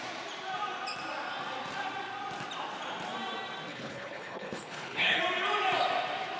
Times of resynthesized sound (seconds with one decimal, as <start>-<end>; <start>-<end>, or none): 3.7-5.2